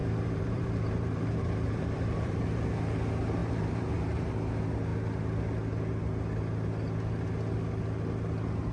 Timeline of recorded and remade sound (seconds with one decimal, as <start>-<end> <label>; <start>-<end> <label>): 0.0-2.6 remade; 2.6-3.4 recorded; 3.4-4.3 remade; 4.3-8.7 recorded